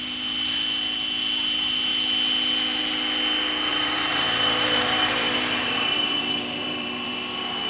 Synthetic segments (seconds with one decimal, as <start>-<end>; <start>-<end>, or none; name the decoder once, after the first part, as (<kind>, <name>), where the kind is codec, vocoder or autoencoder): 3.7-7.1 (vocoder, BigVGAN v2)